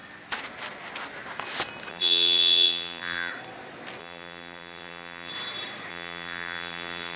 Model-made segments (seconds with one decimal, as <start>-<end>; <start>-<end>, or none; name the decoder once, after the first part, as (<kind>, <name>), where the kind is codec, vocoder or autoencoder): 1.9-3.3 (vocoder, BigVGAN v2); 4.0-5.3; 5.9-7.2